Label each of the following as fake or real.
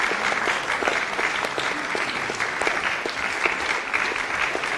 real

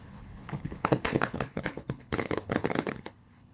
fake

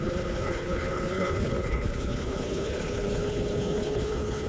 fake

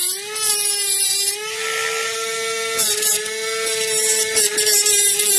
real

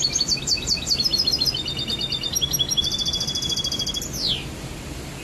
real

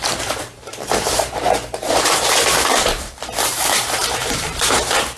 fake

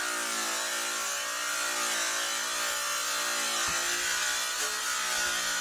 real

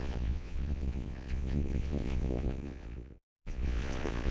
fake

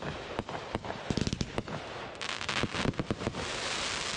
real